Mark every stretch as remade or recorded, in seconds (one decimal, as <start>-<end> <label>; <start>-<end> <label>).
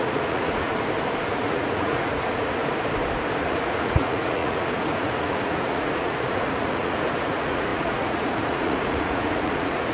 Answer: 0.0-0.7 remade; 0.7-1.3 recorded; 1.3-2.6 remade; 2.6-3.4 recorded; 3.4-9.9 remade